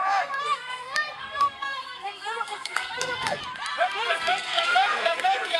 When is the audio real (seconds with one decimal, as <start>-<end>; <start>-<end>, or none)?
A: 3.4-3.8